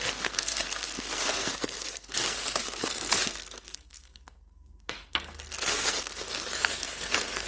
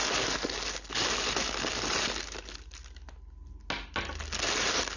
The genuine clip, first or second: second